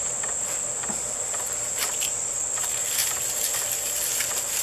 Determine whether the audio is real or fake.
real